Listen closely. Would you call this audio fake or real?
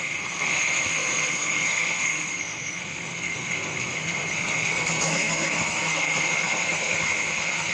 fake